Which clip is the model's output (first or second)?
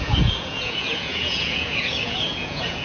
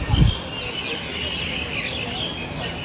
first